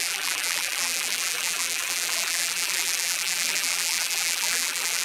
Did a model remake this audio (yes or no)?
yes